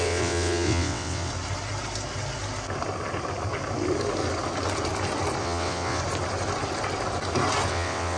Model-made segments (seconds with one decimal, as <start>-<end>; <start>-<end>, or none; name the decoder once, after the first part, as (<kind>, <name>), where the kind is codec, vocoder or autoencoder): 0.0-1.3 (vocoder, WaveNeXt); 5.4-6.0; 7.7-8.2